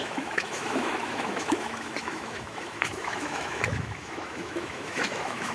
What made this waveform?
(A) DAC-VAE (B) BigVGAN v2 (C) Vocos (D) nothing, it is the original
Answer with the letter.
A